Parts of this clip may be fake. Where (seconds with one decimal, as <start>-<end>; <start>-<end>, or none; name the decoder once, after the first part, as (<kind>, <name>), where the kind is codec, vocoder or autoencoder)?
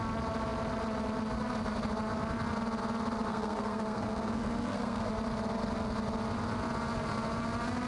3.3-5.1 (codec, SNAC)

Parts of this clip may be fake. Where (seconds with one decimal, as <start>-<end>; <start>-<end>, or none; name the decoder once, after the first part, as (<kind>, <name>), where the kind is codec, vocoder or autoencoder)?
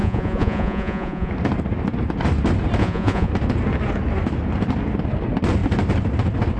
0.0-1.3 (vocoder, Vocos); 2.8-3.3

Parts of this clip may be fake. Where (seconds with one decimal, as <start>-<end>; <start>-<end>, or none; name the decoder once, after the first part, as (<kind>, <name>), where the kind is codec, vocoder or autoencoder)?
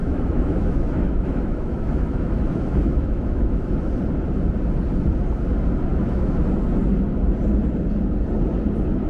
0.0-3.7 (autoencoder, DAC-VAE); 5.9-6.4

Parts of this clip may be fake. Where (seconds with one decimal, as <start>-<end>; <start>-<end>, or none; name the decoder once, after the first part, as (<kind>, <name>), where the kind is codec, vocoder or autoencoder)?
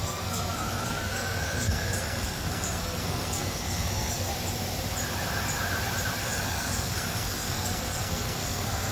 0.0-4.3 (codec, SNAC); 6.2-8.9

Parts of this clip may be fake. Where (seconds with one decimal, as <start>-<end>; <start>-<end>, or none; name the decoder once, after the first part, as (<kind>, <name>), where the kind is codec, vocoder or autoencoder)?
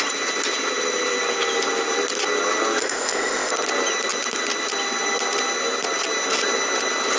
2.8-3.5 (codec, ZipCodec)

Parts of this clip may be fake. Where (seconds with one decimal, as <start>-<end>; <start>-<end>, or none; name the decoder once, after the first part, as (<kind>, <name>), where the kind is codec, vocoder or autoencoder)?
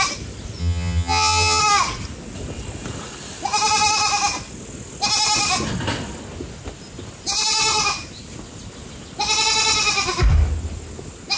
0.6-1.6 (vocoder, HiFi-GAN)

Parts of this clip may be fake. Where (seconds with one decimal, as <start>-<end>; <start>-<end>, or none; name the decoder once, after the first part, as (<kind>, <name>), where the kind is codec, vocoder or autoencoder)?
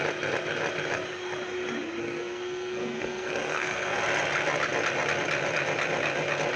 2.0-4.0 (codec, SNAC)